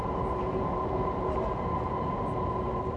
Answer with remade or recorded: recorded